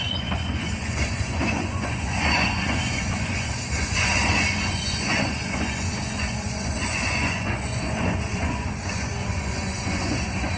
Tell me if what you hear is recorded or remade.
remade